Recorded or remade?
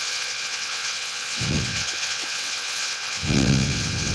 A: remade